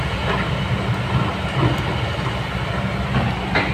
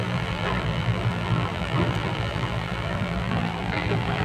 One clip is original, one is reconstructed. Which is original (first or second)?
first